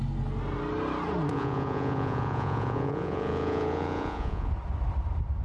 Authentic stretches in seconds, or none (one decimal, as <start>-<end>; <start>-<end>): 0.0-1.3; 4.5-5.4